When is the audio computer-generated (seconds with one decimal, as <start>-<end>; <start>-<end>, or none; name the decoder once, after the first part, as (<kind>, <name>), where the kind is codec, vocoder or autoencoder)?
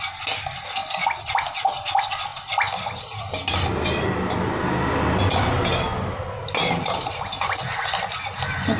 none